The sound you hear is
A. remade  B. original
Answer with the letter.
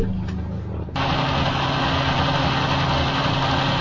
B